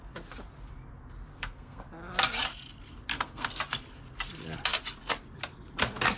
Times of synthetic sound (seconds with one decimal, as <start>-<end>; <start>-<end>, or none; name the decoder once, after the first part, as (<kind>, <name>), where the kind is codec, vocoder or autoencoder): 1.3-1.9 (codec, SNAC); 3.1-3.6